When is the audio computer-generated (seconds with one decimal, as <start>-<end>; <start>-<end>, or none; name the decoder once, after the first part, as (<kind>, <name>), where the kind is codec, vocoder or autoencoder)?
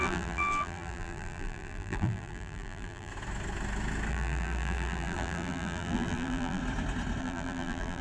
0.0-3.1 (vocoder, BigVGAN v2); 4.1-6.6; 7.2-8.0